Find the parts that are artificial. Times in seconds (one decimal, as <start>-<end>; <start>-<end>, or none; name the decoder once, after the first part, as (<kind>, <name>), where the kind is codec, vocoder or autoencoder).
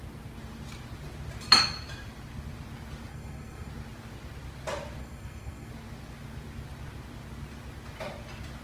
3.1-3.7 (codec, SNAC); 5.0-5.7